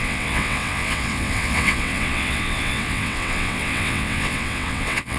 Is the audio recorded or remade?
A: remade